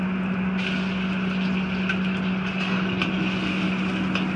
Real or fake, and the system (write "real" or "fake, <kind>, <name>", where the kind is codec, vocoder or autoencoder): real